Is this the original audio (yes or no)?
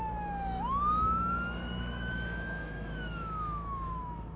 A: no